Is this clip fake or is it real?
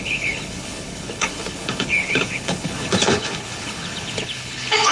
fake